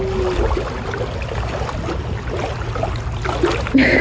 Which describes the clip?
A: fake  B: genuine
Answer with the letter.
B